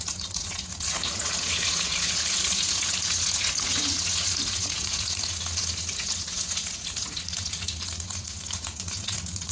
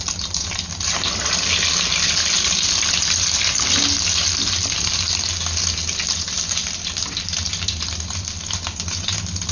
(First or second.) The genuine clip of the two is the second